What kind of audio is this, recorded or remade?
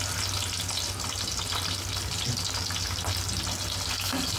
recorded